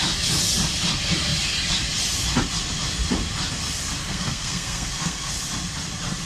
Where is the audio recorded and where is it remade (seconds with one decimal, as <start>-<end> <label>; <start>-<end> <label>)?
0.0-4.0 recorded; 4.0-5.3 remade; 5.3-6.3 recorded